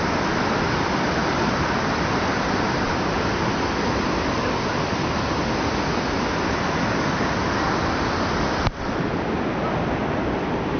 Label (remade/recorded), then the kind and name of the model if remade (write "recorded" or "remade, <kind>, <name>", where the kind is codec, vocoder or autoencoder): recorded